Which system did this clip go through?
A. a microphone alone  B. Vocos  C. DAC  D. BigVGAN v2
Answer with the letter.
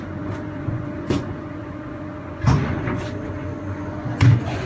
B